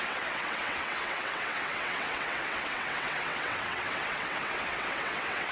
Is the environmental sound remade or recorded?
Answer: remade